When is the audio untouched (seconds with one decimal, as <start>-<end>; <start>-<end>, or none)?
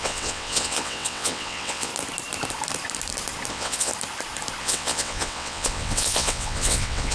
1.9-3.5; 3.9-4.6